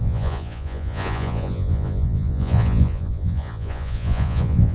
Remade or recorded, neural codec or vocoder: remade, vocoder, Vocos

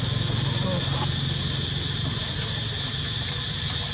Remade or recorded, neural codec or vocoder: recorded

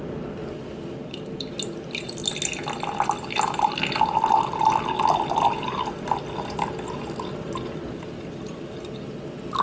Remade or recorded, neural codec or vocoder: recorded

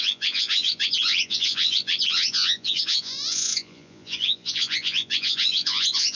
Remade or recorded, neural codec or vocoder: remade, vocoder, Vocos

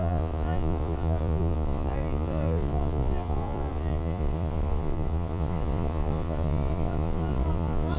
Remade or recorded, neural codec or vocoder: remade, vocoder, Vocos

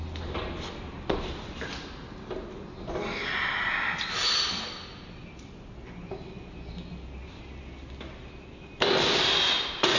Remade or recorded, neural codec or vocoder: recorded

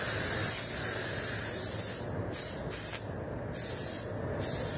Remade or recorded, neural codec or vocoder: recorded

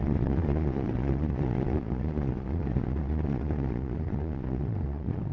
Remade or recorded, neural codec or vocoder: remade, vocoder, Vocos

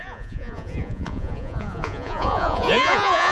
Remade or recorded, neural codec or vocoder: remade, vocoder, Vocos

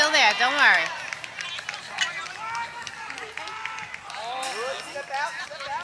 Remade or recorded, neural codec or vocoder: recorded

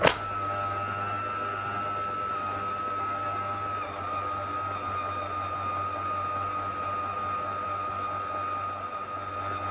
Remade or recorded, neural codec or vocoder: recorded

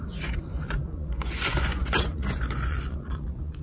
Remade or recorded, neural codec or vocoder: remade, vocoder, Vocos